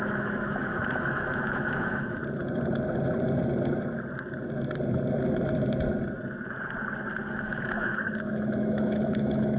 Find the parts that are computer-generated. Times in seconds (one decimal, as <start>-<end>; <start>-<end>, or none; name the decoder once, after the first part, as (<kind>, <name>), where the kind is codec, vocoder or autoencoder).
0.0-2.2 (autoencoder, DAC-VAE); 7.3-9.6